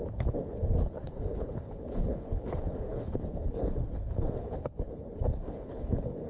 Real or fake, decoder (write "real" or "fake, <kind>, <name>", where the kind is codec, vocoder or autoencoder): fake, codec, HILCodec